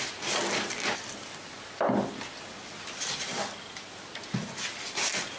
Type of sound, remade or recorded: recorded